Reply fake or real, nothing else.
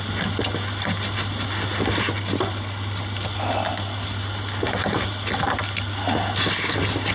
real